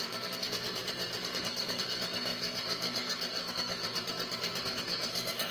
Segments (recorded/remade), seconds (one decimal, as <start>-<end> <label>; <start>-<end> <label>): 0.0-5.5 remade